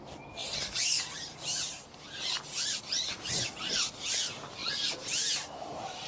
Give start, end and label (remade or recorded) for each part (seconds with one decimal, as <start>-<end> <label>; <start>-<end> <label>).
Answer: 0.0-0.4 recorded; 0.4-3.7 remade; 3.7-4.6 recorded; 4.6-6.1 remade